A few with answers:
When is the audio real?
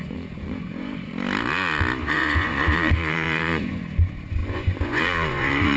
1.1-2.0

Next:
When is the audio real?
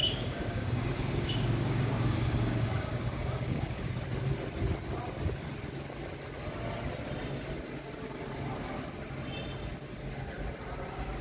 3.9-11.2